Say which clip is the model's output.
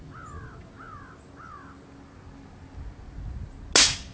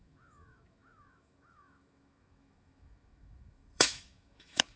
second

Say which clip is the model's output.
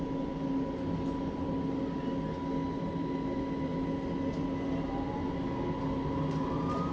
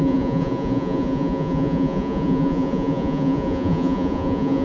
second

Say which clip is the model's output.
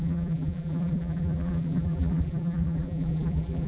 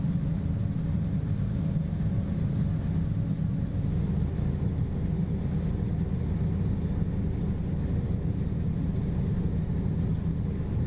first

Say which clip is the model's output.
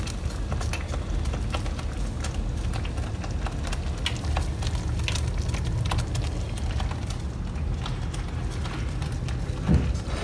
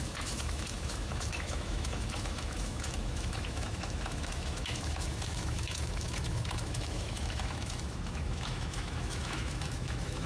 second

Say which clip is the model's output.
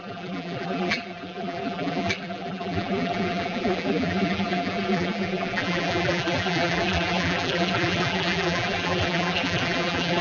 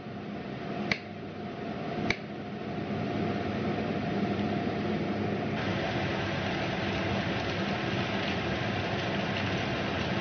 first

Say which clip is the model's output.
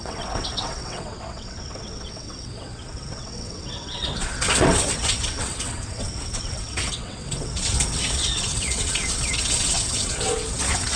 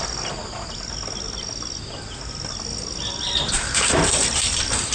first